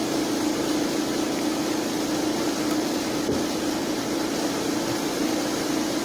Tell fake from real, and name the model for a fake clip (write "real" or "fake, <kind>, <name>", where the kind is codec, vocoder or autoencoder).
fake, vocoder, BigVGAN v2